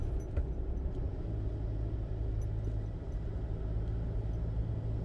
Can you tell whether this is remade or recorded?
recorded